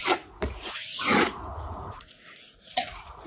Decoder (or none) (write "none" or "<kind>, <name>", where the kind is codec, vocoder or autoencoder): vocoder, Vocos